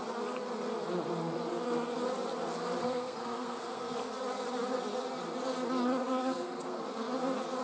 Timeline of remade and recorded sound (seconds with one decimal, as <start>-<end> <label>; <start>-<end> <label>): 0.0-2.8 recorded; 2.8-4.0 remade; 4.0-6.0 recorded; 6.0-6.8 remade; 6.8-7.6 recorded

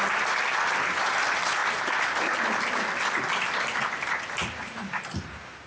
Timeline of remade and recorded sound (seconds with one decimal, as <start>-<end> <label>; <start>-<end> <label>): 0.0-5.7 recorded

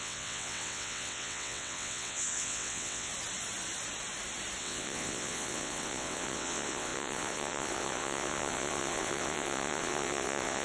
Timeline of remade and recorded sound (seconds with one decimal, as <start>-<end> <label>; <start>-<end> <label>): 0.0-3.1 remade; 3.1-4.6 recorded; 4.6-10.6 remade